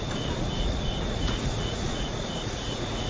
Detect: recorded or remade remade